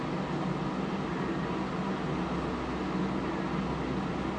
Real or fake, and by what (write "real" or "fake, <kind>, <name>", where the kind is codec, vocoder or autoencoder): real